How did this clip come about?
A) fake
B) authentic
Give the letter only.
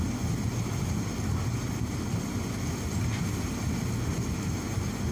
B